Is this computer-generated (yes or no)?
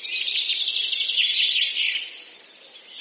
no